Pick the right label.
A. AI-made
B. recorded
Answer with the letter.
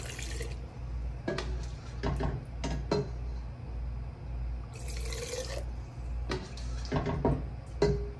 B